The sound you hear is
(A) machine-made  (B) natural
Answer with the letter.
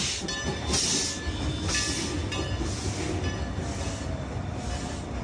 B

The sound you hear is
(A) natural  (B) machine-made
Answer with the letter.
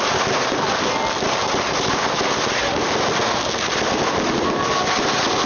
A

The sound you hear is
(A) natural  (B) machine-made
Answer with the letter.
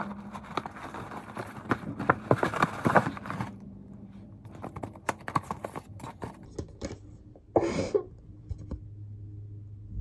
A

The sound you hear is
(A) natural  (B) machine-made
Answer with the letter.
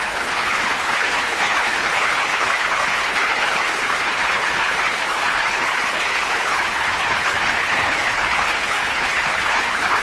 B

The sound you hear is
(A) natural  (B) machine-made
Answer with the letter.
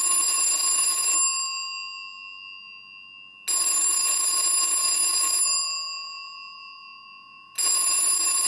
A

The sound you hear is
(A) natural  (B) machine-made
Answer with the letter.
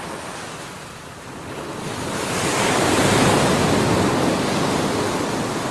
A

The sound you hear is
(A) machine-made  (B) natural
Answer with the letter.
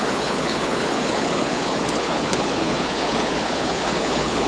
A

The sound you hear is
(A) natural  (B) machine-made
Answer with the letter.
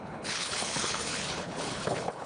B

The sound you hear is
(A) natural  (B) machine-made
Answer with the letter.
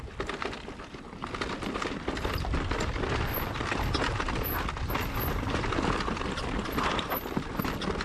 A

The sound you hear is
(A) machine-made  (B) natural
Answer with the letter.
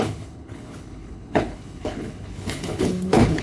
A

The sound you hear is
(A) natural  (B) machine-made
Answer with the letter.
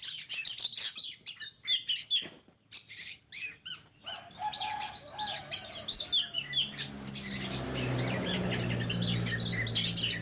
A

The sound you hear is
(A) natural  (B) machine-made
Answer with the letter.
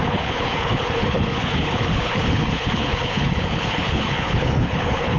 B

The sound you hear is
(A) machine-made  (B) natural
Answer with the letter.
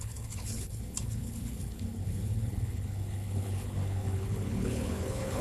A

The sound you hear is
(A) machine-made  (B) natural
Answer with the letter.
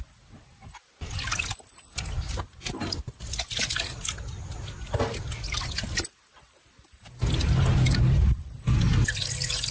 B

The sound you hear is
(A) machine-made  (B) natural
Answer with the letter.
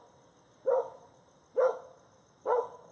B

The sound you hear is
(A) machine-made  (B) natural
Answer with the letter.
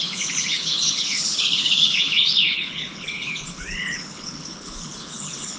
A